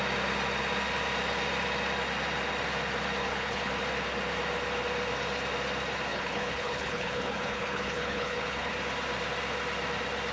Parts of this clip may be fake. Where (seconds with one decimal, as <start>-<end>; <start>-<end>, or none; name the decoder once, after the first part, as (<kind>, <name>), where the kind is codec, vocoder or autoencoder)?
3.2-3.7 (codec, HILCodec); 6.1-8.7